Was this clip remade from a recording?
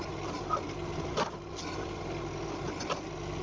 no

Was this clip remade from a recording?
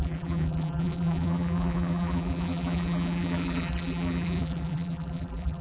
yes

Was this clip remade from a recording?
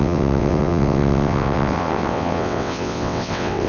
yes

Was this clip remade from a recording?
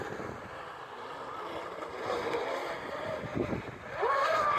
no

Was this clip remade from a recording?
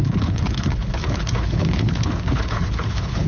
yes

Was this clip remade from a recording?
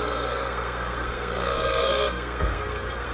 yes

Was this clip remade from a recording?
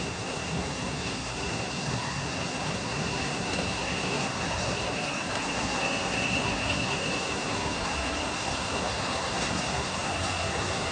yes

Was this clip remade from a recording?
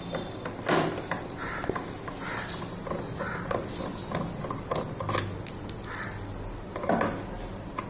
no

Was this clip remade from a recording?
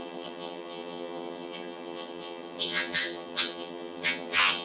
yes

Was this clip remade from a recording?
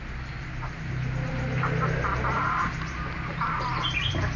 no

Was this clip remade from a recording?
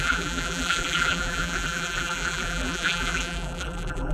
yes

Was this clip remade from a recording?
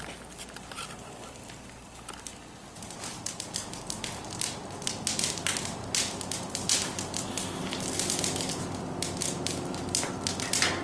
no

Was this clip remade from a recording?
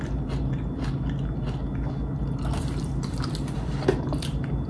no